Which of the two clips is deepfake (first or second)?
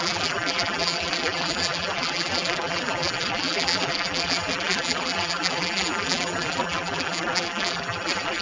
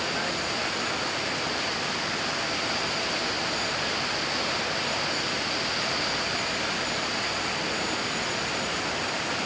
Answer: first